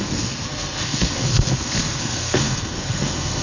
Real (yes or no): no